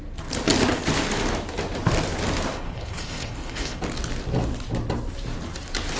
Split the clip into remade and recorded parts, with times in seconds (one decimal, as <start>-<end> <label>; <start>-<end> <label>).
0.0-2.5 recorded; 2.5-3.8 remade; 3.8-6.0 recorded